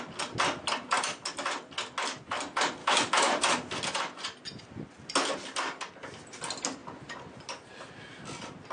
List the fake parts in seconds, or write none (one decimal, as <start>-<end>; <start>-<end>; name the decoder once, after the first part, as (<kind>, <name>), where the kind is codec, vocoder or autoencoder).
2.8-3.3 (autoencoder, DAC-VAE)